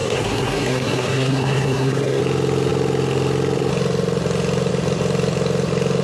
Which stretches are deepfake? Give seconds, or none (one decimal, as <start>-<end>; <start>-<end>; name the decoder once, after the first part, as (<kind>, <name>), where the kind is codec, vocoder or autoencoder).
0.0-2.2 (codec, SNAC)